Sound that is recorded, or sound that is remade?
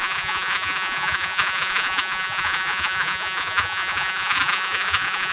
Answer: remade